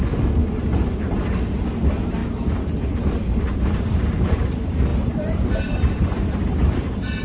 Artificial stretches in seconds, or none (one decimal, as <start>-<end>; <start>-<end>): 0.0-0.4; 1.5-2.2; 3.1-7.2